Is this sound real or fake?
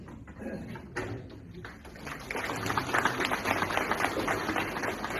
real